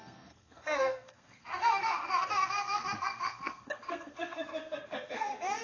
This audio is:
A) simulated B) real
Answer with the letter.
A